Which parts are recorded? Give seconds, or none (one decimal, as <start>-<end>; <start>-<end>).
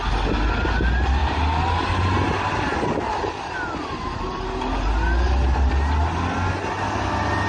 0.0-7.5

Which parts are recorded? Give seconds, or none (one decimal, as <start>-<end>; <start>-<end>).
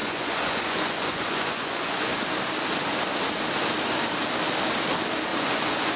2.1-5.3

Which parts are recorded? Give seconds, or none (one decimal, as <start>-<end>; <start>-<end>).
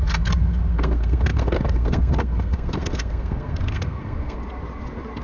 4.4-5.2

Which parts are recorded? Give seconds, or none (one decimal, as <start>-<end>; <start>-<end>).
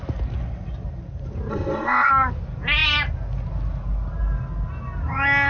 0.0-1.5; 2.1-5.5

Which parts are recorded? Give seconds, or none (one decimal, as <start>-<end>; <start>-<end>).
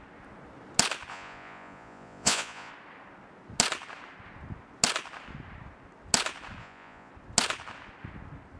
0.0-1.1; 2.7-6.6; 7.1-8.6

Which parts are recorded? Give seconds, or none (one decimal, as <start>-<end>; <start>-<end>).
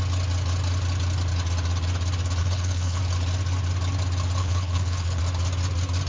0.0-2.4; 3.0-4.4; 5.2-6.1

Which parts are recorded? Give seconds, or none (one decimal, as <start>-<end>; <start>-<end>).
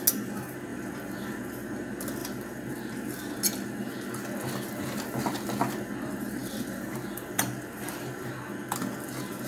0.0-0.7; 1.3-2.2; 2.7-6.4; 8.3-9.5